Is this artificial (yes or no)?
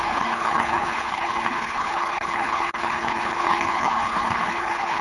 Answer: yes